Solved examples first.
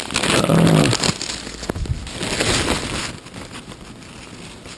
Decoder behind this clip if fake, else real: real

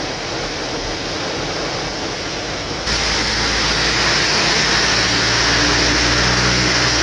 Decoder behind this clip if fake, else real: real